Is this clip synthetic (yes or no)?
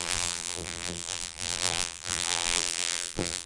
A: yes